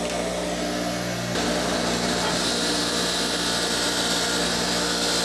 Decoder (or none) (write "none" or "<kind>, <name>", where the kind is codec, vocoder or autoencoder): none